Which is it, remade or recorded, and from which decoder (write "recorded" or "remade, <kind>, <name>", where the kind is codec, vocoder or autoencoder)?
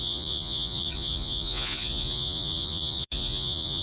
remade, vocoder, Vocos